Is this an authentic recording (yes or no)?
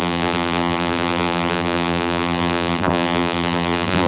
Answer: no